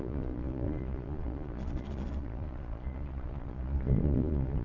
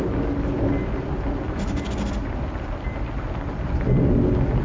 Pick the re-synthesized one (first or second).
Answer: first